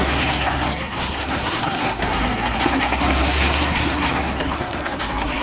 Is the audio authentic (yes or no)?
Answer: no